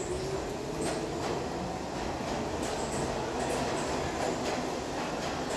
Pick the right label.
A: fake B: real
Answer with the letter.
B